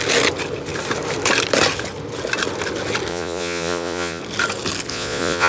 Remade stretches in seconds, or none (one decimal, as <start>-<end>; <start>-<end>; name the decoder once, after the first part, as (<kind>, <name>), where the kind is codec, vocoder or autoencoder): 3.1-4.2 (vocoder, Vocos); 4.9-5.5